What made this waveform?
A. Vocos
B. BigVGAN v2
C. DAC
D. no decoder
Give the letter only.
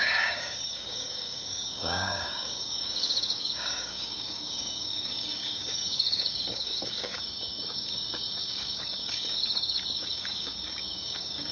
C